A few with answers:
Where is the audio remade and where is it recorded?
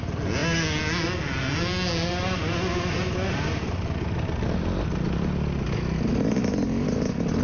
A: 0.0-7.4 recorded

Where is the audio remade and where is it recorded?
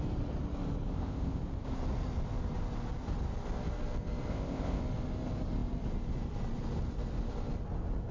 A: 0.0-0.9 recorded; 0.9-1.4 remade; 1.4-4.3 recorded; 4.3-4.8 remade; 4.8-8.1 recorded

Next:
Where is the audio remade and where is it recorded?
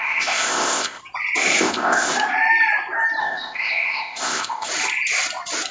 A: 0.0-1.0 remade; 1.0-1.6 recorded; 1.6-2.1 remade; 2.1-3.2 recorded; 3.2-4.7 remade; 4.7-5.7 recorded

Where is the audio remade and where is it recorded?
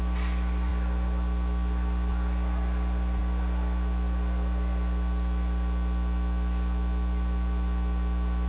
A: 0.0-8.5 recorded